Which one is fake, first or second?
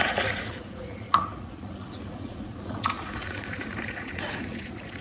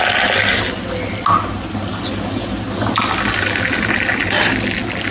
first